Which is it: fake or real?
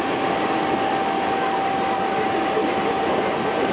real